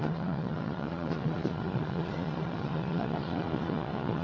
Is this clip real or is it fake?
fake